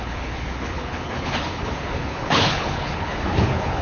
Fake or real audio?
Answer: fake